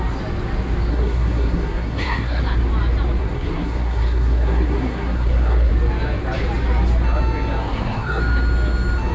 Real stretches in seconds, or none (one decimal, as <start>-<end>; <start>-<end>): 0.0-0.9; 2.4-3.2; 5.7-7.6; 8.2-9.1